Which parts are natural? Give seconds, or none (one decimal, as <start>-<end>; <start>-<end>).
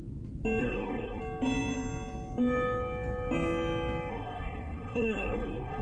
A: 0.0-0.6; 1.2-4.1